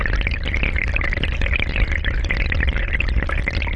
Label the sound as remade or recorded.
recorded